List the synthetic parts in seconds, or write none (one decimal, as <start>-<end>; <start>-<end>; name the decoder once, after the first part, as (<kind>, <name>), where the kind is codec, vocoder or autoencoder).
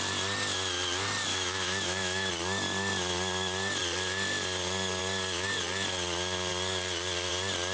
1.3-2.3 (autoencoder, DAC-VAE)